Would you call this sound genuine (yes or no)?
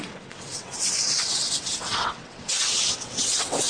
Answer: no